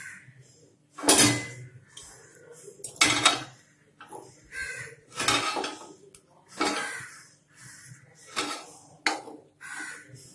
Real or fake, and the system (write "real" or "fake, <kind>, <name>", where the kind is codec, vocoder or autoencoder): real